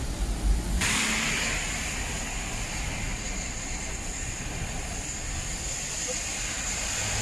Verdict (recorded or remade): recorded